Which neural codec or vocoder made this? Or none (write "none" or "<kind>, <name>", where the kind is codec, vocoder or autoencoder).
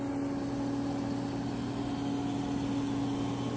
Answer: none